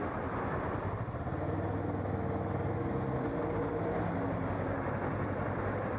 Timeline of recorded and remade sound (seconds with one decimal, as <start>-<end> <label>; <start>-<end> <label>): 0.0-0.7 recorded; 0.7-1.3 remade; 1.3-4.9 recorded; 4.9-6.0 remade

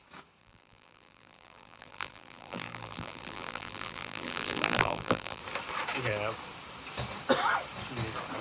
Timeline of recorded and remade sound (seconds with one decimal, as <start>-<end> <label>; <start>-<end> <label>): 0.0-0.4 recorded; 0.4-5.4 remade; 5.4-8.4 recorded

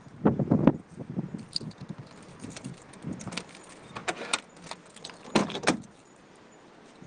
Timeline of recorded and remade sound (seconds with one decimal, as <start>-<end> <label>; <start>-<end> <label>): 0.0-2.3 recorded; 2.3-2.9 remade; 2.9-7.1 recorded